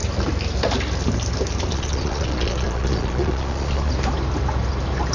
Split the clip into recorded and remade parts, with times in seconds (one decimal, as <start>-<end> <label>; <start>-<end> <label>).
0.0-1.7 recorded; 1.7-3.9 remade; 3.9-5.1 recorded